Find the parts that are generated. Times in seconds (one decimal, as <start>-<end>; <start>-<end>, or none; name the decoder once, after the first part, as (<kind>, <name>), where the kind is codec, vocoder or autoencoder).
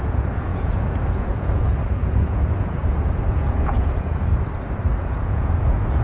0.0-4.3 (vocoder, Vocos); 5.0-6.0